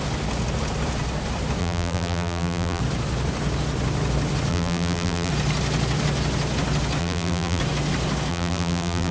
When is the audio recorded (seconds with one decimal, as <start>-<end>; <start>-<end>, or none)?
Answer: 0.0-1.6; 2.8-4.5; 5.3-7.0; 7.6-8.3